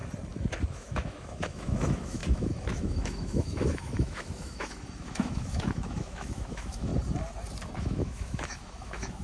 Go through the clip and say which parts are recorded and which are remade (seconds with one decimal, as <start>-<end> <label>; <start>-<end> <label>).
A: 0.0-0.7 recorded; 0.7-6.9 remade; 6.9-7.8 recorded; 7.8-9.2 remade